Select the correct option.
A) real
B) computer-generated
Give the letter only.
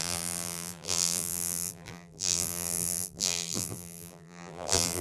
B